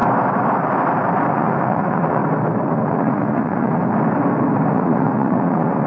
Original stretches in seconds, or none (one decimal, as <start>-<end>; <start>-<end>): 0.0-1.3; 2.2-2.7; 3.8-4.7